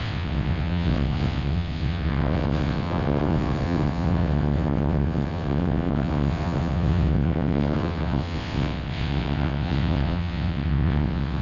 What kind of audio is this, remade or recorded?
remade